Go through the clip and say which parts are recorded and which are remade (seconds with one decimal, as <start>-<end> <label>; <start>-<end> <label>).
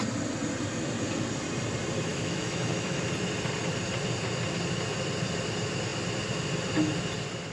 0.0-2.1 recorded; 2.1-3.0 remade; 3.0-7.5 recorded